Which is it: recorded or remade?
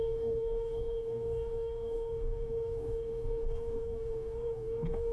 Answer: remade